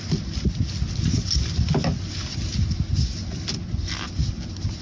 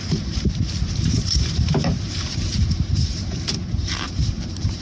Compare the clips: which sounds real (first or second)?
first